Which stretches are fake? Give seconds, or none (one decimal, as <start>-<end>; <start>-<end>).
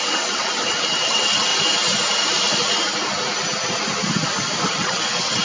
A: 0.0-1.5; 4.7-5.4